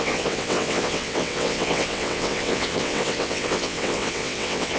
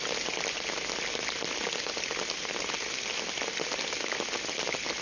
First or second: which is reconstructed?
first